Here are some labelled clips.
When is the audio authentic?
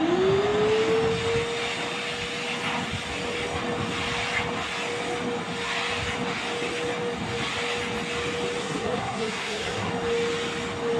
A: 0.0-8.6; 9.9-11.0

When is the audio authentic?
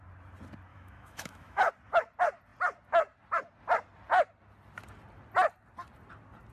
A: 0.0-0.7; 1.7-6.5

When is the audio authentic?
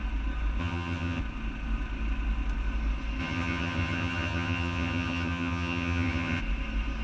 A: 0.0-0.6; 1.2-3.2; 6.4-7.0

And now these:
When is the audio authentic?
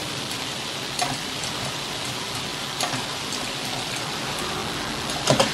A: 4.6-5.1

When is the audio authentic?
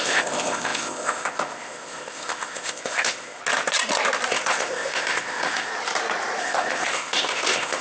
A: 3.4-4.3; 5.7-6.4